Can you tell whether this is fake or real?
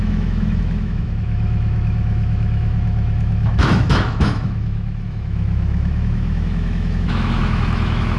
fake